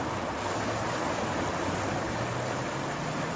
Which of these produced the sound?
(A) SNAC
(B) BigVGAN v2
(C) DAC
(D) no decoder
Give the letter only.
D